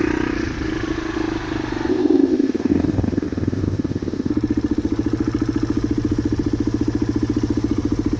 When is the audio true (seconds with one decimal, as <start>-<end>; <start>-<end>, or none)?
0.0-1.9; 4.3-8.2